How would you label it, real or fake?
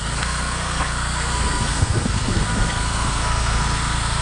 fake